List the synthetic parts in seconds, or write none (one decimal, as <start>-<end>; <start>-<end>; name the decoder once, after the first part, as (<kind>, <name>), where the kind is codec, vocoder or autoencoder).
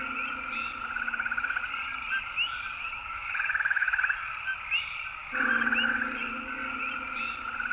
3.0-4.0 (autoencoder, DAC-VAE)